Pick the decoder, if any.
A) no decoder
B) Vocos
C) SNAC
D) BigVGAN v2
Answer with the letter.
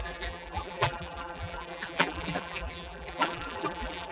D